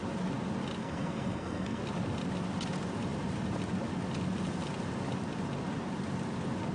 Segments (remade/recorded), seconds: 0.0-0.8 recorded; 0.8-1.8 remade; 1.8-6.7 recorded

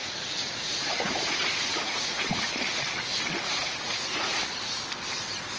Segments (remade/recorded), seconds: 0.0-2.4 remade; 2.4-3.6 recorded; 3.6-4.4 remade; 4.4-5.6 recorded

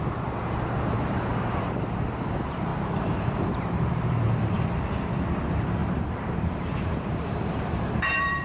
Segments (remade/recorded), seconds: 0.0-1.3 recorded; 1.3-1.8 remade; 1.8-2.7 recorded; 2.7-4.6 remade; 4.6-5.8 recorded; 5.8-8.4 remade

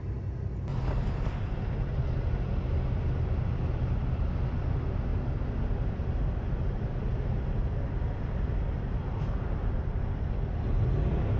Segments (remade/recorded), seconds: 0.0-11.4 recorded

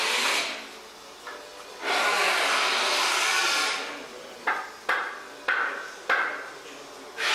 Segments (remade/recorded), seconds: 0.0-7.3 recorded